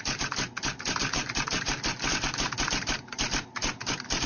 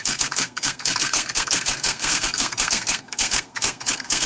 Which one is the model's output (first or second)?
second